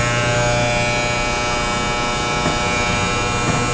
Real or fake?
real